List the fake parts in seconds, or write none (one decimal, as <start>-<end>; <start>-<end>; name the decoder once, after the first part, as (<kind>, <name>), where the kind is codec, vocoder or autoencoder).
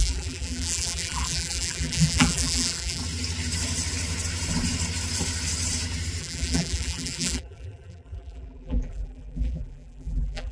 0.0-3.0 (vocoder, BigVGAN v2); 6.2-10.5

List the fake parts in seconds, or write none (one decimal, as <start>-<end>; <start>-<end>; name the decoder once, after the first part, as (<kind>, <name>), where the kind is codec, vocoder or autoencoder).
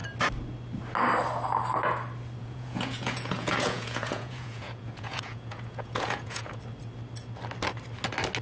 2.4-6.6 (vocoder, Vocos)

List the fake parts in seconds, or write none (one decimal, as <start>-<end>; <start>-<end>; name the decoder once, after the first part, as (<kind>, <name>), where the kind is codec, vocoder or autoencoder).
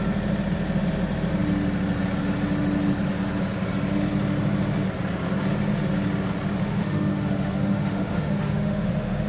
6.7-9.3 (autoencoder, DAC-VAE)